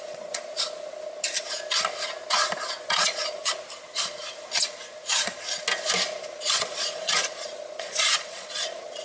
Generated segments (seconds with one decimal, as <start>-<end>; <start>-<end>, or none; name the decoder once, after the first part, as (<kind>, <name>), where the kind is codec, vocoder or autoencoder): 0.0-0.5 (vocoder, Vocos); 2.8-3.5; 6.5-9.0